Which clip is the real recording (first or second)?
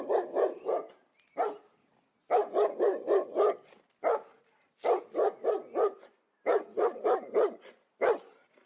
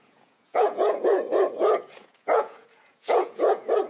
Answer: first